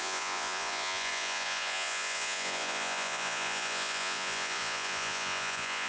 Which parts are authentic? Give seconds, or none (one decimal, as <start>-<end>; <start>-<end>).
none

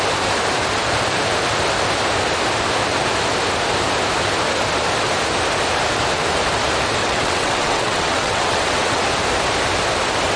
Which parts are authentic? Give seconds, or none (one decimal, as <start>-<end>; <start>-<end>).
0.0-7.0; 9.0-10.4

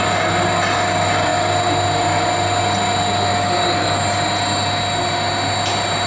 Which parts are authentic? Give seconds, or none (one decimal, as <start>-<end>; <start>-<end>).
0.0-6.1